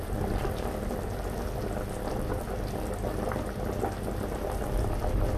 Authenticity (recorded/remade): recorded